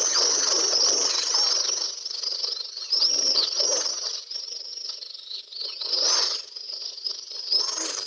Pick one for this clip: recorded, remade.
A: recorded